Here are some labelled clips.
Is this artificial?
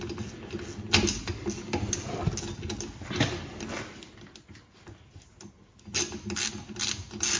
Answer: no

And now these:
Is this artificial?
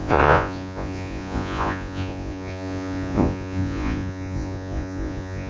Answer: yes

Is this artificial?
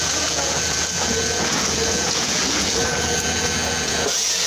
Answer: yes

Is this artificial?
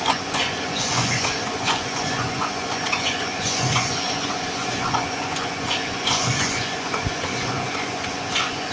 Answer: yes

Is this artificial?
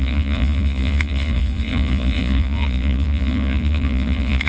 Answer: yes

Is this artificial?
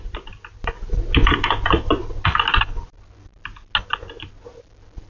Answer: no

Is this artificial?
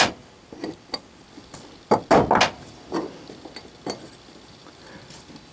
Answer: no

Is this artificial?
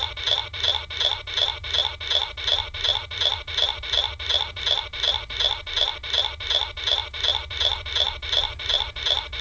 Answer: no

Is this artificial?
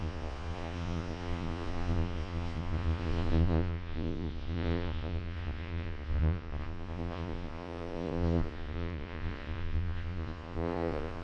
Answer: yes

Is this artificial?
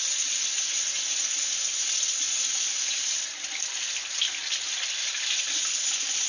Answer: no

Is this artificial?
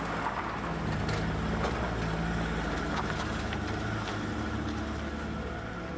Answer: no